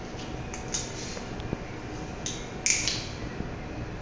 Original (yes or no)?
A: yes